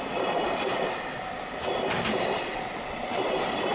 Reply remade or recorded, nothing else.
recorded